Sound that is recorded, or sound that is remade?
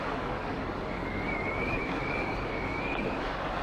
remade